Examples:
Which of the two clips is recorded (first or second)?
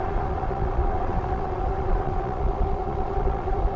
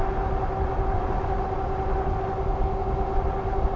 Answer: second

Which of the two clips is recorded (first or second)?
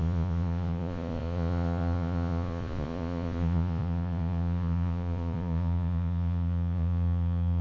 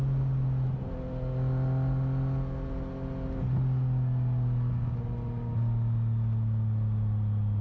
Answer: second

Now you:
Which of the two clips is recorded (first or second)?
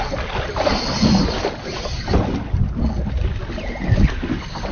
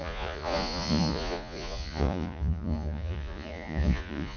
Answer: first